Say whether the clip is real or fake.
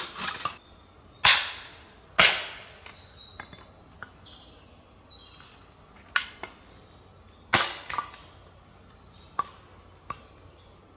real